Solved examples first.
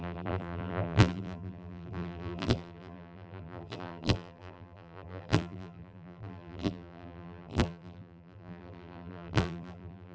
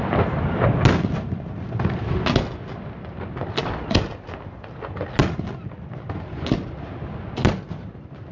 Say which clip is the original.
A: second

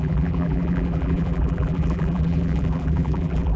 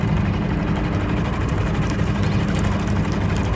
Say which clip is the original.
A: second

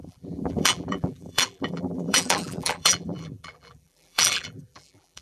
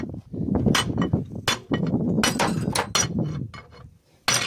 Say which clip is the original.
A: second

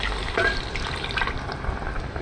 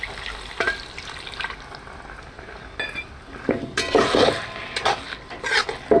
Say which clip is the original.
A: second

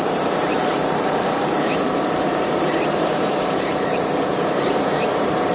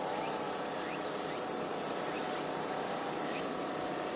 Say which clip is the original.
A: second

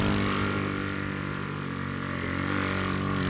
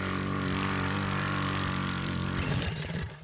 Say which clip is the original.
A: first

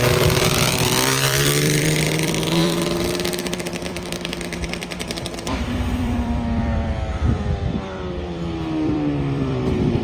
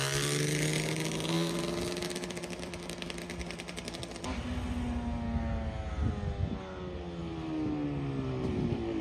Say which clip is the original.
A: second